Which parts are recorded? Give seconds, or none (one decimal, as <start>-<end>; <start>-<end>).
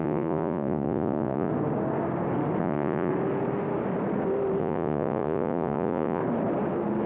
1.5-2.6; 3.1-4.6; 6.2-7.1